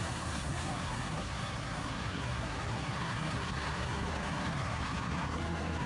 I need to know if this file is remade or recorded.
remade